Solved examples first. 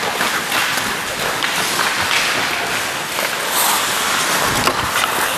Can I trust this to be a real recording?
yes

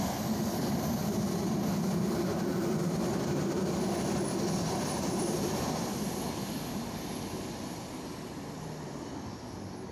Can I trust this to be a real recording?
yes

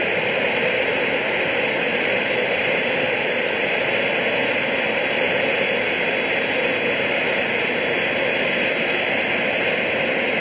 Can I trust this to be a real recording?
yes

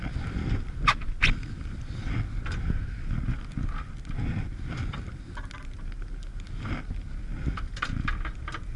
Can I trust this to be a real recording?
yes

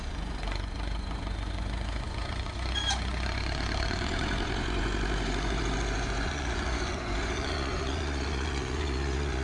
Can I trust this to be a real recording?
no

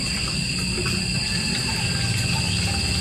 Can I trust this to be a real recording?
no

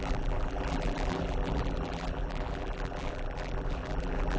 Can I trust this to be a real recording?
no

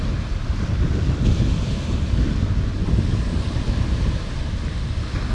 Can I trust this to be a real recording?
yes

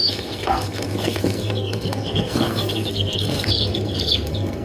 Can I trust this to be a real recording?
no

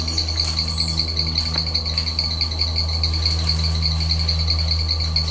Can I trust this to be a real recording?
yes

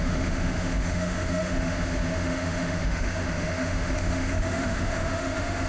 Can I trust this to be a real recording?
no